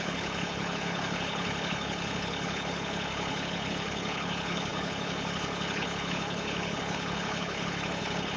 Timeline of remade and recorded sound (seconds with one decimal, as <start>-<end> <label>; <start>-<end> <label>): 0.0-8.4 remade